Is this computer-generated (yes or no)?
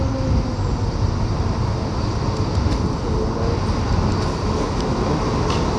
no